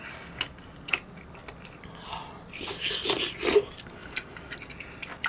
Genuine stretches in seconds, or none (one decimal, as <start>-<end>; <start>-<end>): 0.0-1.4; 2.9-5.3